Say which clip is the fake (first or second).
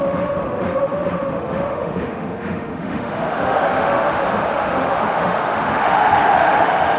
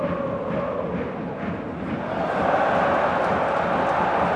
first